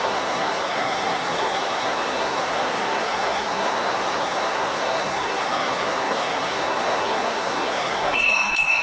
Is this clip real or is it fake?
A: fake